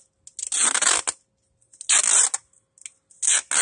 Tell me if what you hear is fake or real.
real